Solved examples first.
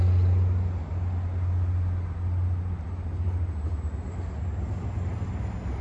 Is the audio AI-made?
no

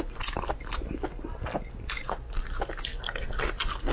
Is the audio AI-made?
no